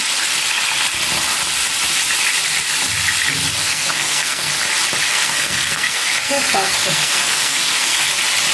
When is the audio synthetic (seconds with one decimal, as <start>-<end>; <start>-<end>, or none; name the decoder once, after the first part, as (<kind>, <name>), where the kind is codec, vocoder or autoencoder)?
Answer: 3.6-4.5 (codec, SNAC); 5.1-8.1